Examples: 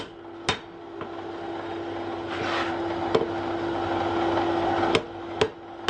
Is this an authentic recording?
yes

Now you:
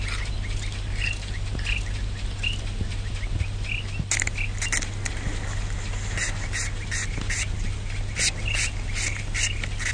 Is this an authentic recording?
yes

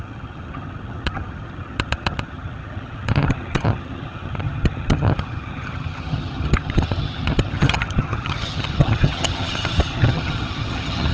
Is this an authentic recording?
no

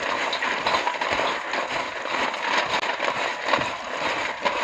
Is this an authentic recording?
yes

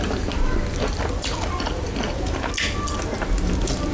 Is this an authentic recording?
yes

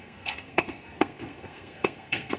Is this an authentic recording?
no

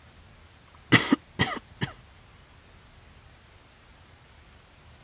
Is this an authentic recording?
yes